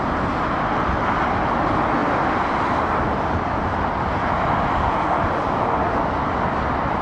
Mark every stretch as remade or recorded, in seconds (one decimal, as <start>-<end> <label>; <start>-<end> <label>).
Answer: 0.0-7.0 recorded